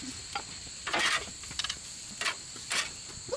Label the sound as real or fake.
real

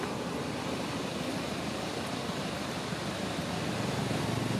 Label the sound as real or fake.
real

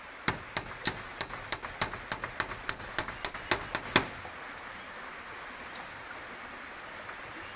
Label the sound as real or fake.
real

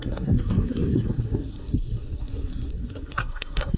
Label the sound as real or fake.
fake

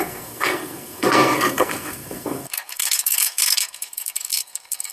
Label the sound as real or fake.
fake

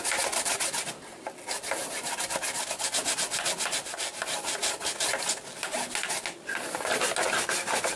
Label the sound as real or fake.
real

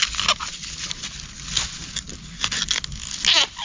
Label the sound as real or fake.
real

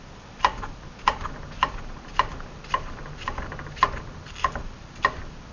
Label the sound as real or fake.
real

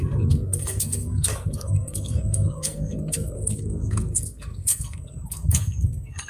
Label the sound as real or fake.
fake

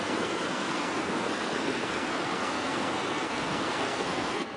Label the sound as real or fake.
fake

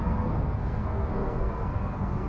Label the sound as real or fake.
fake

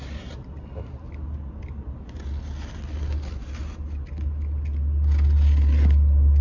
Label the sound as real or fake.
real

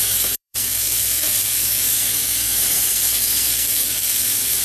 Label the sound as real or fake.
fake